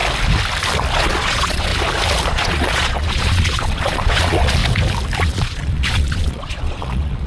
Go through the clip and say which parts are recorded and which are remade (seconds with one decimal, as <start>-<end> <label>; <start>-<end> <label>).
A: 0.0-0.9 recorded; 0.9-1.7 remade; 1.7-2.3 recorded; 2.3-4.6 remade; 4.6-5.2 recorded; 5.2-7.3 remade

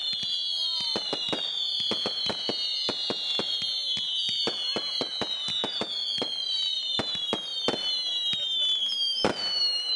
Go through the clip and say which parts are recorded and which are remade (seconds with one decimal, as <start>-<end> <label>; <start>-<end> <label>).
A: 0.0-10.0 recorded

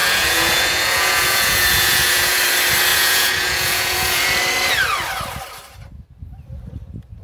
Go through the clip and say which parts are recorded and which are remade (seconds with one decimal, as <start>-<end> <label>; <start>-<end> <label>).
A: 0.0-2.4 remade; 2.4-2.9 recorded; 2.9-4.4 remade; 4.4-7.2 recorded

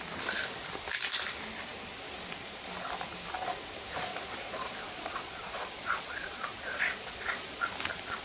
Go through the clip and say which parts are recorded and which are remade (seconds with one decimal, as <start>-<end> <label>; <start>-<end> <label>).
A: 0.0-4.1 recorded; 4.1-7.6 remade; 7.6-8.2 recorded

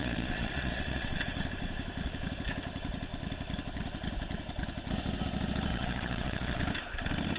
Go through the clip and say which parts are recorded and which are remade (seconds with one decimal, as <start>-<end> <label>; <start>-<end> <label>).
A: 0.0-1.2 remade; 1.2-5.7 recorded; 5.7-6.6 remade; 6.6-7.4 recorded

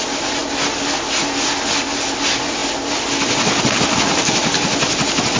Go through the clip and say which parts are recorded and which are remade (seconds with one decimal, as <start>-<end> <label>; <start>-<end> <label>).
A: 0.0-5.4 recorded

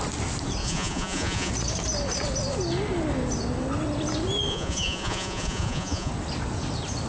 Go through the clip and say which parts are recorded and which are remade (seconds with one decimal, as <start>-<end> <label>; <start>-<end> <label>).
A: 0.0-0.6 recorded; 0.6-1.5 remade; 1.5-4.5 recorded; 4.5-6.1 remade; 6.1-7.1 recorded

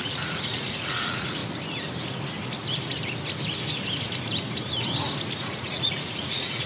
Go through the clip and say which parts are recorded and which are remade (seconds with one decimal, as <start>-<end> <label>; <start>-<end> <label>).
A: 0.0-1.4 remade; 1.4-5.4 recorded; 5.4-6.7 remade